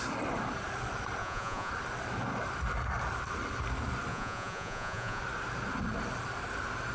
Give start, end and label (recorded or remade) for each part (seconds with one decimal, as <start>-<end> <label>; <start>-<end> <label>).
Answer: 0.0-1.2 recorded; 1.2-1.7 remade; 1.7-4.1 recorded; 4.1-5.2 remade; 5.2-6.9 recorded